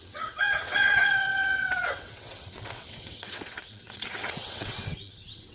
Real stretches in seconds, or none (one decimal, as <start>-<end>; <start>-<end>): none